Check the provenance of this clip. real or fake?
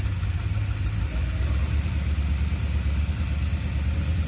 real